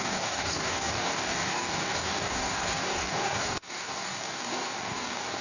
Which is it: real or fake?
fake